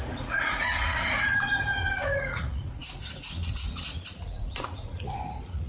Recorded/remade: remade